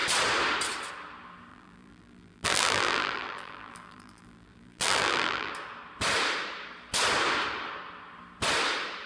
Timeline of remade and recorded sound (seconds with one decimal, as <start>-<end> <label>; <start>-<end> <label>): 0.0-1.5 recorded; 1.5-5.5 remade; 5.5-9.1 recorded